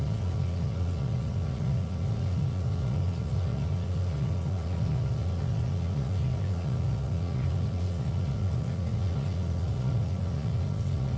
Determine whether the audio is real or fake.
fake